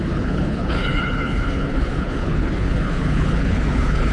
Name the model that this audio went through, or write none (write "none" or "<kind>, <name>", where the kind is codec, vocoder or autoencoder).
codec, HILCodec